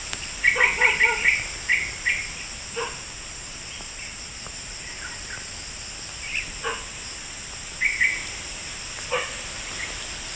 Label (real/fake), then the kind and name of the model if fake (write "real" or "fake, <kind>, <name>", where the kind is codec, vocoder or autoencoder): real